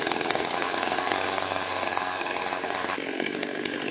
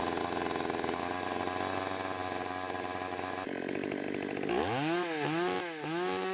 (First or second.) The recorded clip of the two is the second